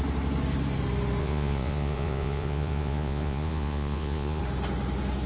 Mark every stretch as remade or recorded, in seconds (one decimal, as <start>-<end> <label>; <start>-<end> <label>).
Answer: 0.0-1.2 recorded; 1.2-4.4 remade; 4.4-5.3 recorded